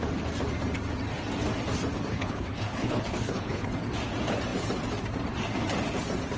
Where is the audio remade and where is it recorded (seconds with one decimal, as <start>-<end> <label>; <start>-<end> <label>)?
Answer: 0.0-2.1 recorded; 2.1-3.7 remade; 3.7-6.4 recorded

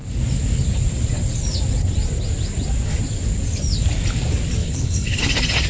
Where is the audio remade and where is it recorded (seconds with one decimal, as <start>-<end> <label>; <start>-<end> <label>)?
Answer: 0.0-4.6 recorded; 4.6-5.2 remade; 5.2-5.7 recorded

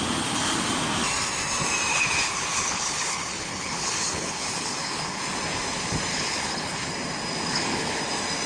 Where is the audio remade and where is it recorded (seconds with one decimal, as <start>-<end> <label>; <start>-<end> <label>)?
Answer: 0.0-1.9 recorded; 1.9-5.2 remade; 5.2-6.1 recorded; 6.1-6.9 remade; 6.9-7.5 recorded; 7.5-8.0 remade; 8.0-8.5 recorded

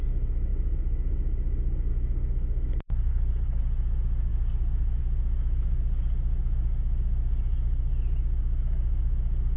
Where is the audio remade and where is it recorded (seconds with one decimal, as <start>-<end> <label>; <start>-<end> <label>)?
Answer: 0.0-3.1 recorded; 3.1-3.6 remade; 3.6-9.6 recorded

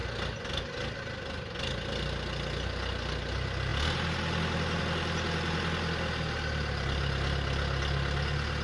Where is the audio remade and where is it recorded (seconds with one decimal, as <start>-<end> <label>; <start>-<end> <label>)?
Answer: 0.0-8.6 recorded

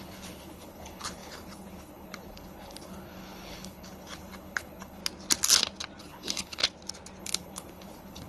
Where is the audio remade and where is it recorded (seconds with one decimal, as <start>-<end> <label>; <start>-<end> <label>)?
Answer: 0.0-5.0 remade; 5.0-6.0 recorded; 6.0-6.6 remade; 6.6-7.2 recorded; 7.2-8.3 remade

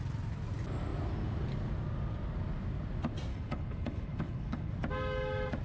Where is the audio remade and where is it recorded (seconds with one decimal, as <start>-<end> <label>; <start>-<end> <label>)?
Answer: 0.0-3.3 recorded; 3.3-4.7 remade; 4.7-5.6 recorded

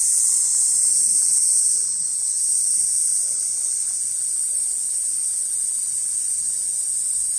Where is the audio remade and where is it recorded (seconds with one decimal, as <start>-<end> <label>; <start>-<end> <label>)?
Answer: 0.0-7.4 recorded